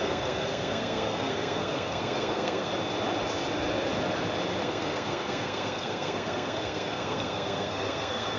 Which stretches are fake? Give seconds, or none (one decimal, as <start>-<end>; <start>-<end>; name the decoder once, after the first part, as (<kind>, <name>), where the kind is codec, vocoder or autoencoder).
0.0-2.7 (codec, SNAC); 4.6-8.4